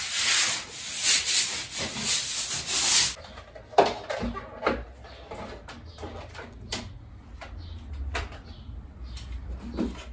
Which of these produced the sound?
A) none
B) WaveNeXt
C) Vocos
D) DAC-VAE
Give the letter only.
A